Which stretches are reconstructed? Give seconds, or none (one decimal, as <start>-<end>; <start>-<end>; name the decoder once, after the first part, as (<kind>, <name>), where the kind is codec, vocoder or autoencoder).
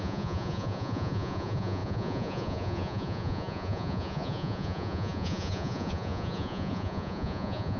0.0-7.8 (vocoder, Vocos)